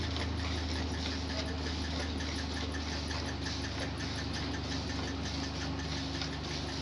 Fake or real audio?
real